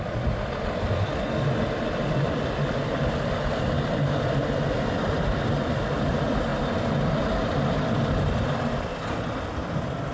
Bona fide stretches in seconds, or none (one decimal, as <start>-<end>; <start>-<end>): 0.0-10.1